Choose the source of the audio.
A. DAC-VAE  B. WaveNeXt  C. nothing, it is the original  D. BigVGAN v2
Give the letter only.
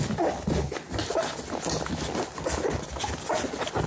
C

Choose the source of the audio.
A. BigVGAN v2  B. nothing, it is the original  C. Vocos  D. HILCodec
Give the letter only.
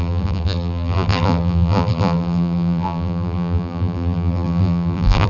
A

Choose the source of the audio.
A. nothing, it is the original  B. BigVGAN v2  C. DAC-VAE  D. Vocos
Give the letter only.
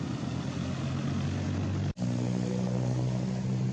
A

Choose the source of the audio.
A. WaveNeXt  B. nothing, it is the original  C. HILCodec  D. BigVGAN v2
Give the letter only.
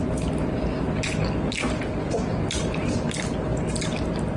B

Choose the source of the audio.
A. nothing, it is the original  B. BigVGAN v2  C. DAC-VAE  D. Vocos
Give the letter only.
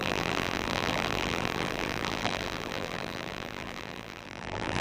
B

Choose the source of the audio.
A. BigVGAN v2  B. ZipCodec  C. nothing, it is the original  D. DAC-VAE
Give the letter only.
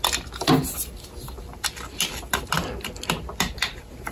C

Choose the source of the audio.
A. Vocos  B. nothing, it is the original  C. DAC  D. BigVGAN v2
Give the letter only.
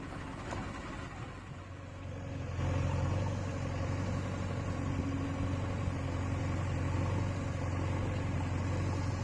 B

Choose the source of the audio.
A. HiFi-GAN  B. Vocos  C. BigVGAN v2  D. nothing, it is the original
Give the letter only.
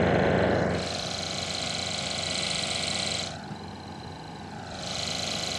D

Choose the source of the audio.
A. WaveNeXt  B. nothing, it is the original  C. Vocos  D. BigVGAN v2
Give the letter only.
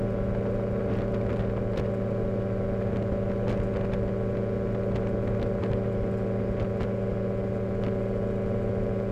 B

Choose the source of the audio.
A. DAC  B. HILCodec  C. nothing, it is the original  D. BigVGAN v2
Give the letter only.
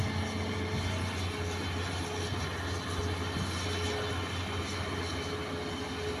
C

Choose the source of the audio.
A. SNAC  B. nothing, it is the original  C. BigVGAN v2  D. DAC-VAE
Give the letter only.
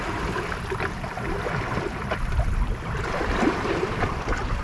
C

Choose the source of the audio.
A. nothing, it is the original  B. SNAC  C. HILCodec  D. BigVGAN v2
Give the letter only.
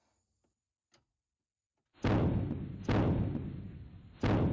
A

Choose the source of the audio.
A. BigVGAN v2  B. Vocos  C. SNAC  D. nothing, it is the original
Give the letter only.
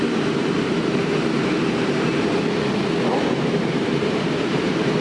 A